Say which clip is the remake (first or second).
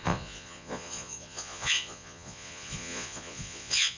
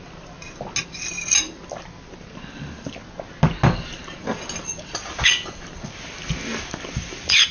first